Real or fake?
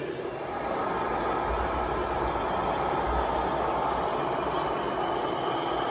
real